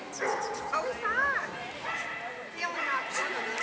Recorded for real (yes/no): yes